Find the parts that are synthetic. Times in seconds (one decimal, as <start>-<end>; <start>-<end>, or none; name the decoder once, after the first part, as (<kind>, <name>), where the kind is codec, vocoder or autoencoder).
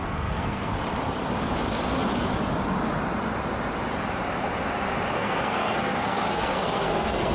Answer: 0.0-0.7 (codec, SNAC); 5.1-7.3